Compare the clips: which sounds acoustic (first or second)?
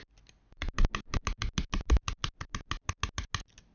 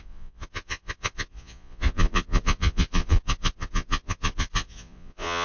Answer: first